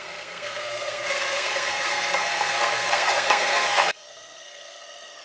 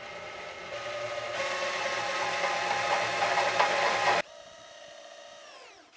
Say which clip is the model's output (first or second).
first